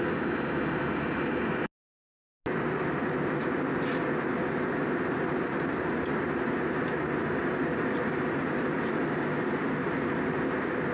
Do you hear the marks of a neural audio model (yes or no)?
no